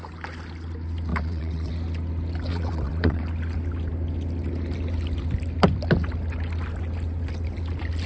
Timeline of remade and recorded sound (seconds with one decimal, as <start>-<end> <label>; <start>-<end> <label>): 0.0-1.1 recorded; 1.1-1.7 remade; 1.7-2.5 recorded; 2.5-3.2 remade; 3.2-8.1 recorded